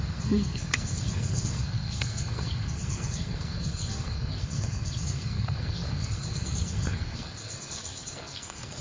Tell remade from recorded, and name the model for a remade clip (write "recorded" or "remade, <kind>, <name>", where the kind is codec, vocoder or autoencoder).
remade, codec, SNAC